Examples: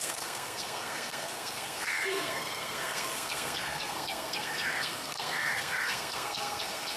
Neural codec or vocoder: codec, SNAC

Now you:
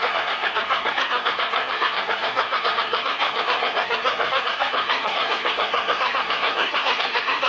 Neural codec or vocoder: codec, SNAC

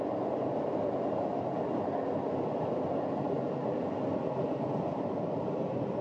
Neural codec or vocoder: none